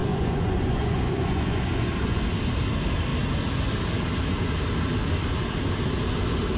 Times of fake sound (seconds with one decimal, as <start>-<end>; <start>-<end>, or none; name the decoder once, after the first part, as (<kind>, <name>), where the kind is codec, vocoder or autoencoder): 0.0-2.2 (vocoder, Vocos)